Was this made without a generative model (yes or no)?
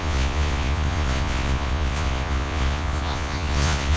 no